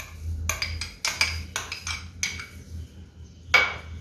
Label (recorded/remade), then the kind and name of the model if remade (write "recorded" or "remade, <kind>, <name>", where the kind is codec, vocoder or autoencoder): recorded